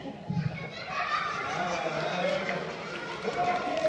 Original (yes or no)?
yes